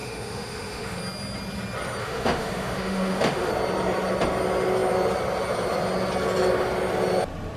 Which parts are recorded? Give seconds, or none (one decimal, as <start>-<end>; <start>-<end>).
1.0-2.0; 3.5-7.6

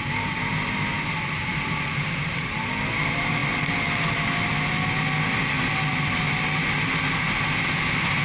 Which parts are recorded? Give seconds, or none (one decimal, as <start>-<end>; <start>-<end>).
0.0-8.2

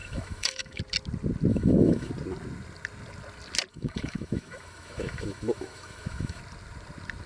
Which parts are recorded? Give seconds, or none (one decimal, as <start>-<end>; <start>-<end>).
0.8-1.5; 2.1-3.7; 6.4-7.3

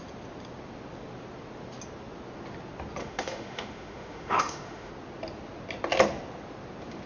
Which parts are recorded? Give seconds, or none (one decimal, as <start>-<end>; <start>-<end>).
0.0-3.0; 4.9-7.1

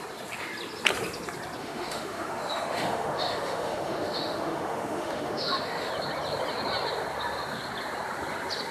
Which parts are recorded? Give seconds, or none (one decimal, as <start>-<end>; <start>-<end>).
0.0-1.6; 5.9-8.7